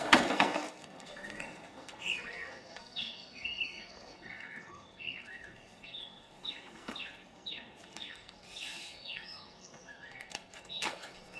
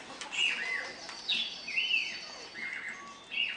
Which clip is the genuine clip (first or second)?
second